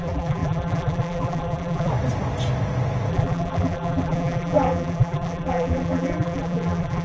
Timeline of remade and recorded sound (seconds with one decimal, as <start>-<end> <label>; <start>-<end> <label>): 0.0-1.9 remade; 1.9-3.1 recorded; 3.1-7.0 remade